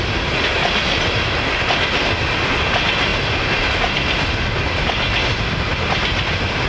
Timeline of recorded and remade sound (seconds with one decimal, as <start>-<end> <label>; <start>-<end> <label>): 0.0-6.7 recorded